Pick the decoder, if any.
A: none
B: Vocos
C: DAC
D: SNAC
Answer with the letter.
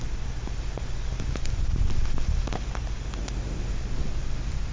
A